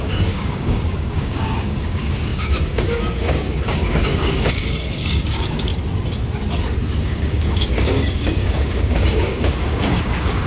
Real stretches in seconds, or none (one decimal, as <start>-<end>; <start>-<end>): 5.7-7.0